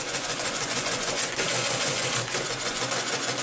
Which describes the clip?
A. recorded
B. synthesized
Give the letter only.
B